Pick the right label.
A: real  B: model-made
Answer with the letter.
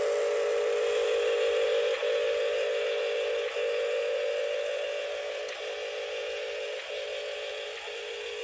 A